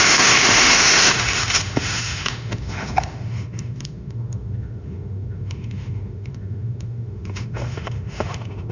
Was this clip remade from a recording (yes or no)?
yes